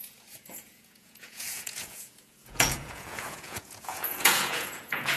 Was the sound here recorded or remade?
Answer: remade